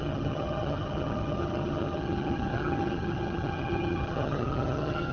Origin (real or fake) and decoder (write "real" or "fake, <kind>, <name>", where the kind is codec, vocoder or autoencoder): fake, vocoder, HiFi-GAN